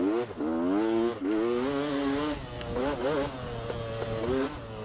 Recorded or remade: recorded